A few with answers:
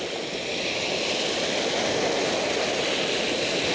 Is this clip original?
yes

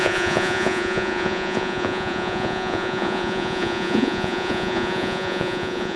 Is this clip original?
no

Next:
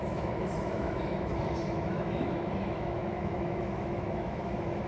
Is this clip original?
no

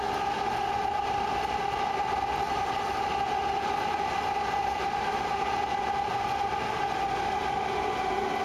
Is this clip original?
yes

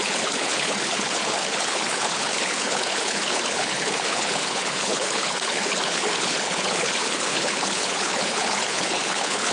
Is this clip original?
no